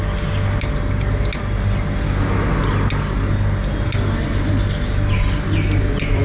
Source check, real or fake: real